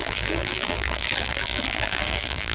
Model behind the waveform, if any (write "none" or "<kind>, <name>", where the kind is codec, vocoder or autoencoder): vocoder, BigVGAN v2